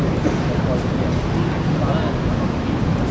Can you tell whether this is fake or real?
real